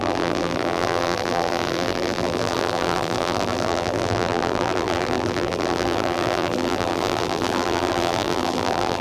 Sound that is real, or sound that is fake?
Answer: fake